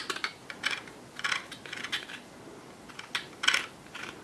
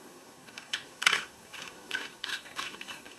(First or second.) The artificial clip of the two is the second